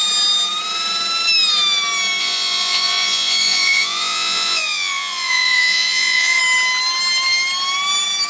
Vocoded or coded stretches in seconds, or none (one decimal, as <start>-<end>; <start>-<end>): 2.2-6.4